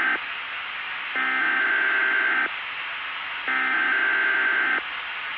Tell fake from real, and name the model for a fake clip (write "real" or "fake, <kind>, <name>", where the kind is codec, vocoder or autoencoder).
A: real